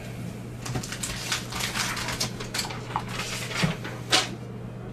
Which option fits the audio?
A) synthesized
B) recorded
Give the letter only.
B